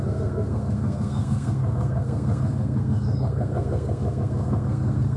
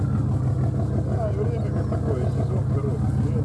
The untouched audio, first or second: second